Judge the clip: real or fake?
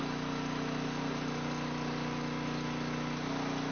real